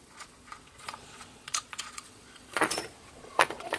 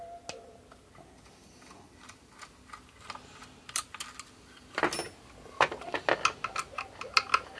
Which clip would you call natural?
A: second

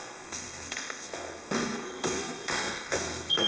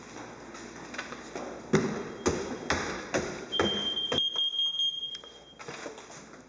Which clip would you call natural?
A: second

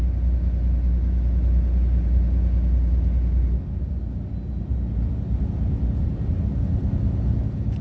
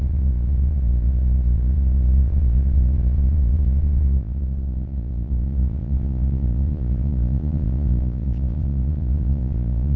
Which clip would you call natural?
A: first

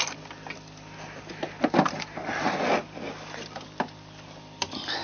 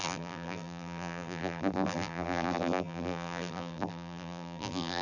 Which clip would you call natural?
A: first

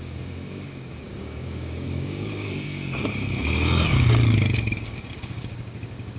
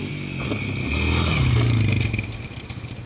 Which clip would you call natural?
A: second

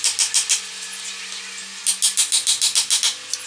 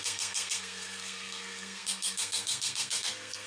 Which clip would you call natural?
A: first